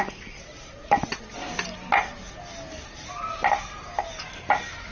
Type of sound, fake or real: real